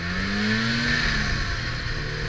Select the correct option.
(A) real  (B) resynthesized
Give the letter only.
A